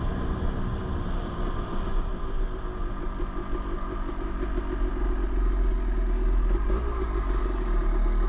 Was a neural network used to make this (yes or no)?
no